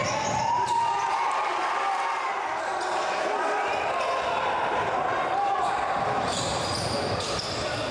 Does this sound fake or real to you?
real